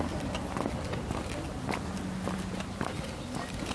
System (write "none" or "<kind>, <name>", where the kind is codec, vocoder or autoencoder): none